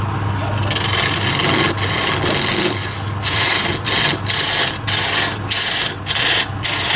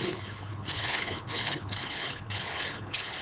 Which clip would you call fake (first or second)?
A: second